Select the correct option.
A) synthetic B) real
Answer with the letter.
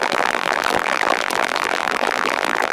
A